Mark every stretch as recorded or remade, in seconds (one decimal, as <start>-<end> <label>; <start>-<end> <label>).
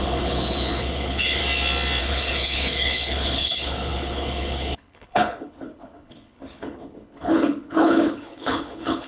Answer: 0.0-1.4 remade; 1.4-2.0 recorded; 2.0-9.1 remade